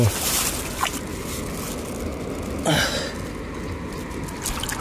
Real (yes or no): yes